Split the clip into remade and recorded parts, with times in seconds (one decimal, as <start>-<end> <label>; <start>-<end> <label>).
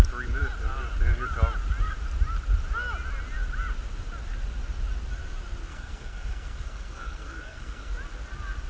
0.0-5.7 recorded; 5.7-7.9 remade; 7.9-8.7 recorded